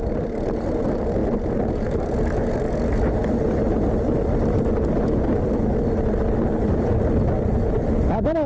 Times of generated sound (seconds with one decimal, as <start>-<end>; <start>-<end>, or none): none

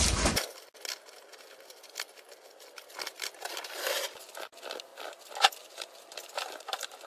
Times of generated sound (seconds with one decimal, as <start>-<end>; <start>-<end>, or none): 0.0-0.5; 3.0-4.9; 5.6-7.1

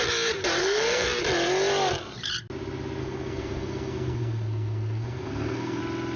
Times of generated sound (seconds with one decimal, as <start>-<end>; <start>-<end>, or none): 0.6-1.2; 3.0-5.8

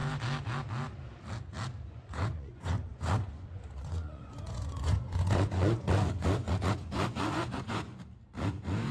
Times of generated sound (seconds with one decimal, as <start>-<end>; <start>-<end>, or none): 1.9-7.9; 8.5-8.9